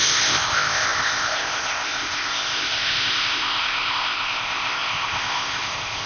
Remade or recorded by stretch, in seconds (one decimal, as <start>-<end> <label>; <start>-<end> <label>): 0.0-6.1 remade